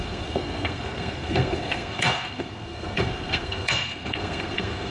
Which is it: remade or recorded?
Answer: remade